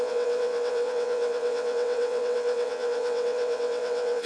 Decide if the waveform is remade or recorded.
remade